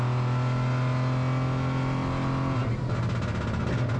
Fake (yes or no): no